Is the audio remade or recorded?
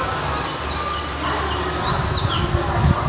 recorded